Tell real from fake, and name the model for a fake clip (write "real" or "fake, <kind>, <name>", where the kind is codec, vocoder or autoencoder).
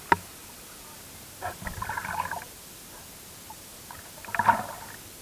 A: real